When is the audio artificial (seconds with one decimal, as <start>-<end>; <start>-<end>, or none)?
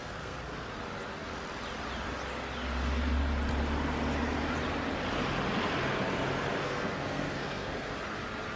0.0-0.7; 6.6-7.9